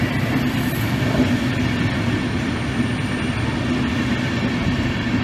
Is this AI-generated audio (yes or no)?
no